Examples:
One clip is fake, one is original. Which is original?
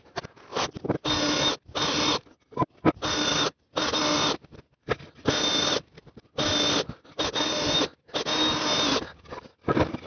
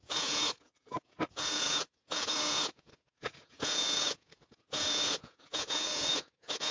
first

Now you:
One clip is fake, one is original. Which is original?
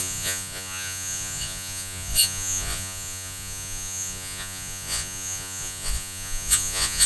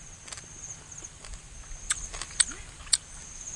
second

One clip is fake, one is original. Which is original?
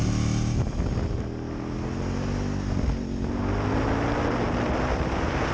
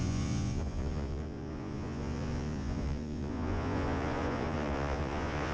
first